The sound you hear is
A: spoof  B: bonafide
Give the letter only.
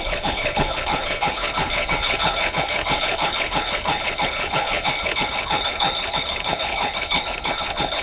A